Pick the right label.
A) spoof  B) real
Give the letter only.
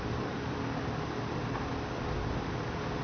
B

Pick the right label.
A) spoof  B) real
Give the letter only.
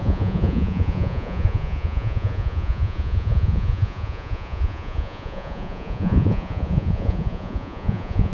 A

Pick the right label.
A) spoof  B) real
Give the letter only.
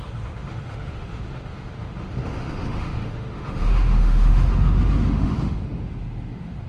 A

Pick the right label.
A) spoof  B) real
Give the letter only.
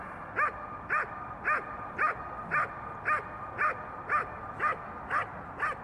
B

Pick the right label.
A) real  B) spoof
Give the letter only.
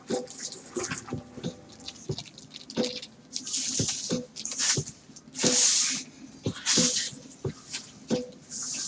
A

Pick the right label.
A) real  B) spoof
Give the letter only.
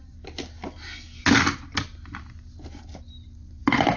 A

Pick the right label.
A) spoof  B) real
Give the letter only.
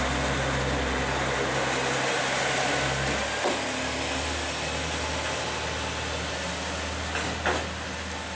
B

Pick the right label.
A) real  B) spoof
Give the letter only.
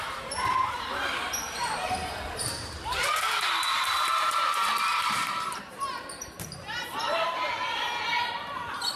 B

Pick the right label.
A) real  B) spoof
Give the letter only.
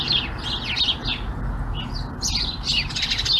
A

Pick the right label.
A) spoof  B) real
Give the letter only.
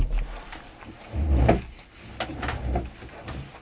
B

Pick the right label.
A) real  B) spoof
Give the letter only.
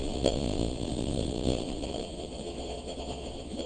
B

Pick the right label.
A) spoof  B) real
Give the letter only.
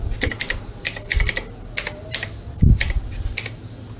B